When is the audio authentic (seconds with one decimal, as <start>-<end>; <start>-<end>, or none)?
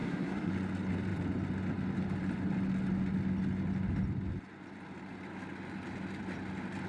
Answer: 0.5-6.9